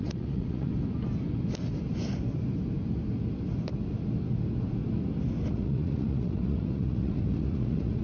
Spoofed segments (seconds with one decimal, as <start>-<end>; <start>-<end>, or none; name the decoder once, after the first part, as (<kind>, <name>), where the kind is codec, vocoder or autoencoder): 0.0-0.7 (vocoder, Vocos); 5.5-8.0